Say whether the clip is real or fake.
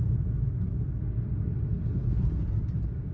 real